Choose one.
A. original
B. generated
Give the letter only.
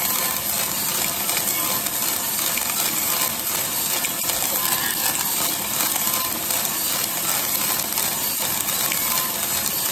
A